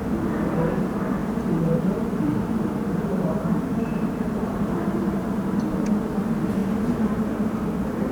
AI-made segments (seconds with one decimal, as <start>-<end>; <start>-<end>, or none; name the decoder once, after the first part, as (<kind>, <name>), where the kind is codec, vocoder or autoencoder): 1.2-5.9 (vocoder, BigVGAN v2)